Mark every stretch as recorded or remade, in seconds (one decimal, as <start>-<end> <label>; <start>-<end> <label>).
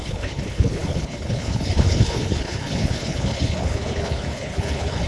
0.0-5.1 remade